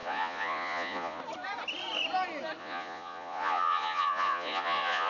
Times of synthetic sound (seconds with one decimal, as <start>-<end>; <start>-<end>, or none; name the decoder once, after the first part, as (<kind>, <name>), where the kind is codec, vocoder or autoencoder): 0.0-1.2 (vocoder, Vocos); 2.6-5.1